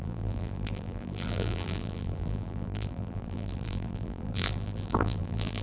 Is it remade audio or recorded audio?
remade